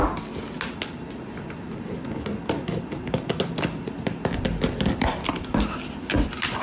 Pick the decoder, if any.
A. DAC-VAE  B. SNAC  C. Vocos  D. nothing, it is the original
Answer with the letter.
D